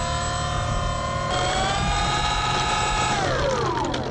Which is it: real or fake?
real